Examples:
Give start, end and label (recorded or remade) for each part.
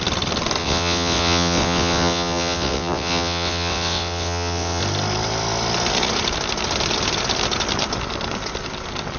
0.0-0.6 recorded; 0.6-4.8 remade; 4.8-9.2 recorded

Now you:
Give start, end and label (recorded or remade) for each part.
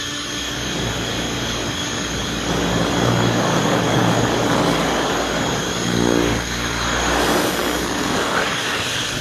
0.0-9.2 remade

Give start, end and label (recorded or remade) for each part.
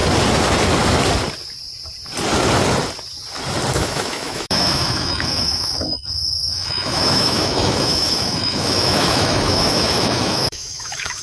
0.0-3.7 recorded; 3.7-11.2 remade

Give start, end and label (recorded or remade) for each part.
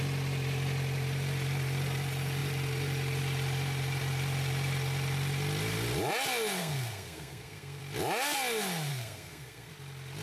0.0-6.6 recorded; 6.6-7.8 remade; 7.8-8.9 recorded; 8.9-9.7 remade; 9.7-10.2 recorded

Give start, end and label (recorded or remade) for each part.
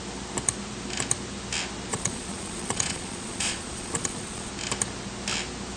0.0-1.9 recorded; 1.9-4.5 remade; 4.5-5.8 recorded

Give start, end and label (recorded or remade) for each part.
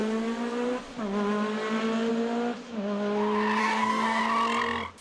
0.0-3.6 recorded; 3.6-4.2 remade; 4.2-5.0 recorded